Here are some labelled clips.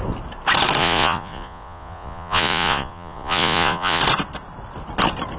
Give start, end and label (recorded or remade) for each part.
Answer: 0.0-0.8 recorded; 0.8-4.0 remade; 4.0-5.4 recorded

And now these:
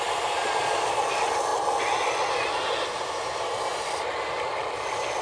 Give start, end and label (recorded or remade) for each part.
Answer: 0.0-0.4 recorded; 0.4-1.0 remade; 1.0-5.2 recorded

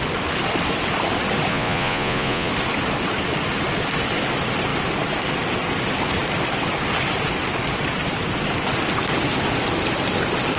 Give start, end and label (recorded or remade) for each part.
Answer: 0.0-1.5 recorded; 1.5-2.5 remade; 2.5-10.6 recorded

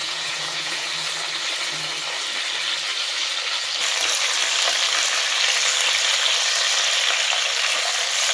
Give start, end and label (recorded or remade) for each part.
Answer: 0.0-0.9 remade; 0.9-8.3 recorded

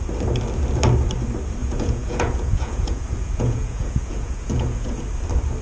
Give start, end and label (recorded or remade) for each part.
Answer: 0.0-1.6 recorded; 1.6-5.0 remade; 5.0-5.6 recorded

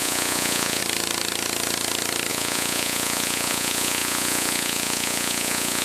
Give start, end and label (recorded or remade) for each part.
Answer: 0.0-0.8 remade; 0.8-2.3 recorded; 2.3-5.8 remade

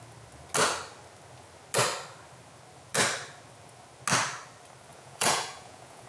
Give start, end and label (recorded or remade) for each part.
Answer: 0.0-4.9 recorded; 4.9-6.1 remade